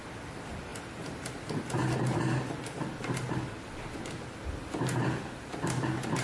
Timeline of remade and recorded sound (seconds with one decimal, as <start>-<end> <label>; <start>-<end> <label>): 0.0-6.2 recorded